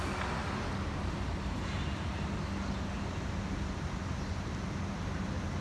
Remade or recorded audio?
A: recorded